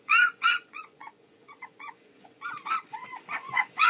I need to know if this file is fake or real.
fake